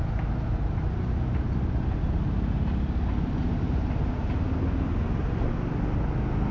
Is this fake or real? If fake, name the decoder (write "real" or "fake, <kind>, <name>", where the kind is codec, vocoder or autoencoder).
real